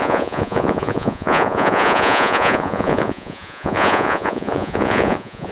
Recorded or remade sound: remade